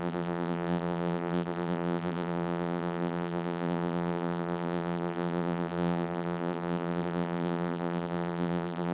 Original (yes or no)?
no